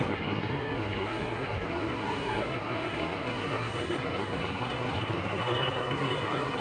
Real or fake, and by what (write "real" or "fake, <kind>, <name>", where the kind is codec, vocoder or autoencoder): fake, codec, SNAC